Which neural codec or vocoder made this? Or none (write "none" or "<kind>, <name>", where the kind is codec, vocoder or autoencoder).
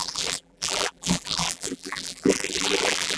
vocoder, BigVGAN v2